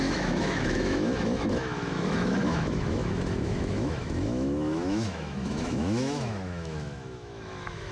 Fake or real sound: fake